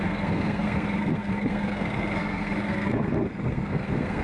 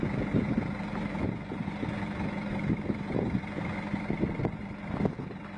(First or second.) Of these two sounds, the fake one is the first